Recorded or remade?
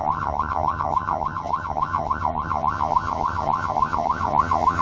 remade